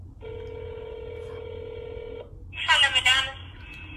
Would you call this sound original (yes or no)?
yes